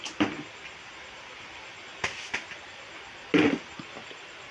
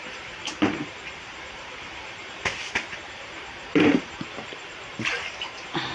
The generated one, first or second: second